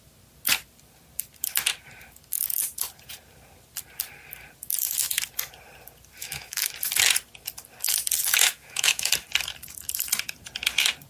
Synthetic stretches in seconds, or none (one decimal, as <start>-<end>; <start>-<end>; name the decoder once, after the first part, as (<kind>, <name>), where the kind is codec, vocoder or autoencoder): 6.2-6.7 (autoencoder, DAC-VAE); 8.4-9.1